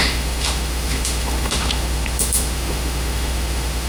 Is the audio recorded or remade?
remade